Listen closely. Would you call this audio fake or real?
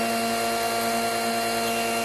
real